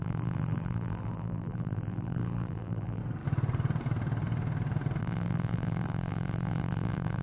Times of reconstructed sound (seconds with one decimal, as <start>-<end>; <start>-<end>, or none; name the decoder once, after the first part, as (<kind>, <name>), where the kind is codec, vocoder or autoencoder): 0.0-3.0 (vocoder, BigVGAN v2); 5.0-7.2